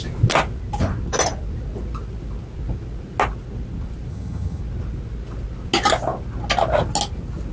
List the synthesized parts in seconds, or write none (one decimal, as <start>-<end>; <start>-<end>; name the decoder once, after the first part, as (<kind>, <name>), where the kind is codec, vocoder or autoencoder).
4.1-4.6 (vocoder, HiFi-GAN)